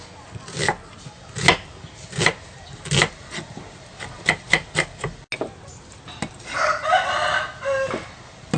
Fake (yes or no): no